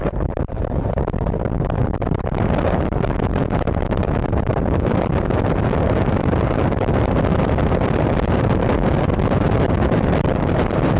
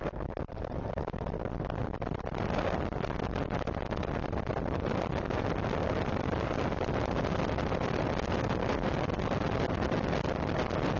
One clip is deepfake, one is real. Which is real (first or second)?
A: second